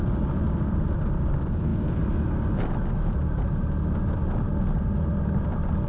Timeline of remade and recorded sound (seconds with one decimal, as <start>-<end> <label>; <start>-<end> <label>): 0.0-1.7 remade; 1.7-4.6 recorded; 4.6-5.9 remade